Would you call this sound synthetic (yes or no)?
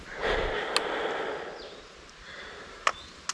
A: no